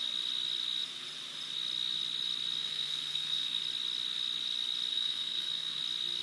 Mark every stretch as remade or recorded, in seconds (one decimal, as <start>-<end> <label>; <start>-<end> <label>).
0.0-2.6 recorded; 2.6-3.6 remade; 3.6-4.9 recorded; 4.9-5.8 remade; 5.8-6.2 recorded